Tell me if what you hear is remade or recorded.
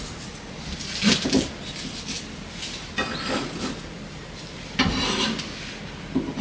recorded